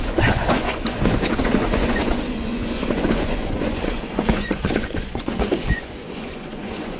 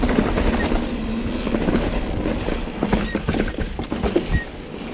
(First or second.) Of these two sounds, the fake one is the first